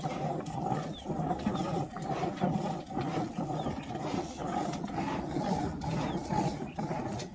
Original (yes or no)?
yes